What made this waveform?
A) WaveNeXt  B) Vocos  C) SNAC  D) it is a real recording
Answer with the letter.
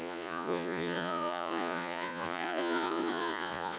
B